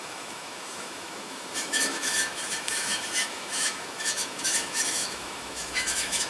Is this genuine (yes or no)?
no